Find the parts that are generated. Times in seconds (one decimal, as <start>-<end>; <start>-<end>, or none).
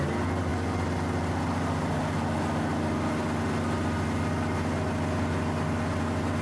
none